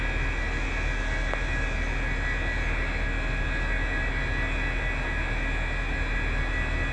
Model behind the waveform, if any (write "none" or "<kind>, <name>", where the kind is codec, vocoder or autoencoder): none